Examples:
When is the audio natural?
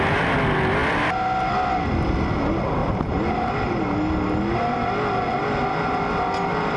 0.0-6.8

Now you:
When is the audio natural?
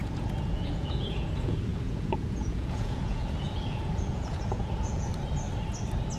5.1-6.2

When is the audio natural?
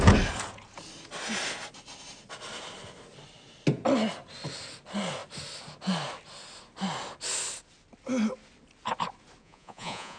0.0-9.4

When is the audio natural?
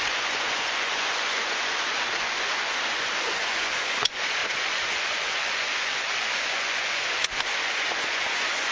none